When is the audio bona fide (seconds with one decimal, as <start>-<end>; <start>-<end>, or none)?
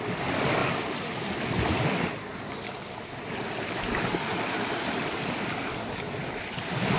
0.0-7.0